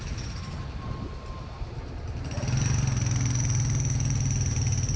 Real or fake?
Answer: real